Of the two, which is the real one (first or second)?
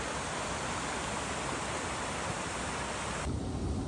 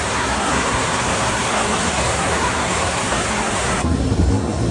first